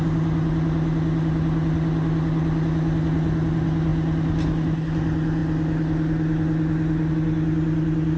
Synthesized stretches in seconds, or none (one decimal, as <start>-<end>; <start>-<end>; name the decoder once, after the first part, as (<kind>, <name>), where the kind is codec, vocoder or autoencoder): none